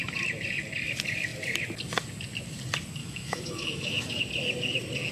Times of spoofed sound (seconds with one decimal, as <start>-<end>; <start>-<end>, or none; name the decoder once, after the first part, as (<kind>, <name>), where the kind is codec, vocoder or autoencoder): 3.0-4.2 (autoencoder, DAC-VAE)